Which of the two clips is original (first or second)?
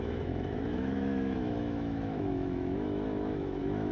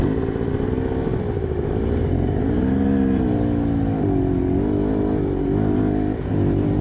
second